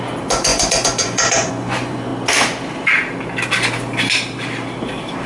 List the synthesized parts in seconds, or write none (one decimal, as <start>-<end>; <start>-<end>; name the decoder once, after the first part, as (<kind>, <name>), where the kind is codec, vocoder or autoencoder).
0.0-2.1 (vocoder, Vocos)